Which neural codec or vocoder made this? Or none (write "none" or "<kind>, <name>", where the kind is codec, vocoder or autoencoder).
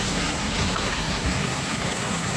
codec, SNAC